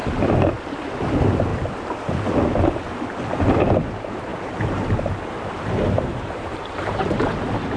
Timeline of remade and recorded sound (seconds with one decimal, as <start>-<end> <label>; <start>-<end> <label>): 0.0-0.6 recorded; 0.6-1.5 remade; 1.5-3.8 recorded; 3.8-7.8 remade